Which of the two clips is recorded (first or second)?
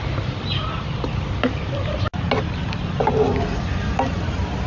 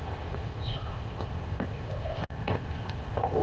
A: first